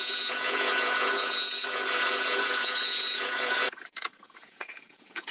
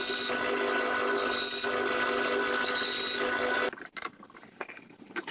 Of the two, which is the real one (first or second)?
second